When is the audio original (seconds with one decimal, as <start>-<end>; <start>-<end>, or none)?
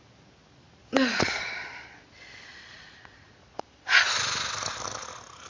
0.0-0.8; 4.1-5.5